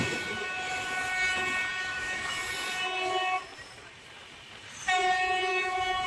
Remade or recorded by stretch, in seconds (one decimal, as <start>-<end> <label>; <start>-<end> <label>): 0.0-1.8 recorded; 1.8-2.5 remade; 2.5-5.5 recorded; 5.5-6.1 remade